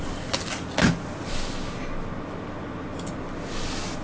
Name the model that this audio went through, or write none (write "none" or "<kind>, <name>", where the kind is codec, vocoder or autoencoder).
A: none